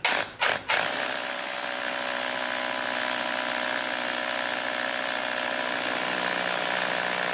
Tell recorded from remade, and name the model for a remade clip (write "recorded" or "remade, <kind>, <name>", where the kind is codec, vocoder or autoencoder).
recorded